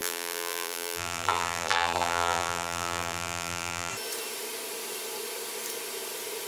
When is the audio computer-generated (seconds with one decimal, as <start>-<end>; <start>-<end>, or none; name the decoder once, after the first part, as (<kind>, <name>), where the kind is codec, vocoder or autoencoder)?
0.0-3.9 (vocoder, BigVGAN v2)